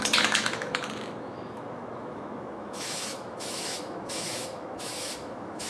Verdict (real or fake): fake